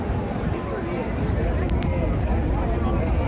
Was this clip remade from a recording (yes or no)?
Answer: no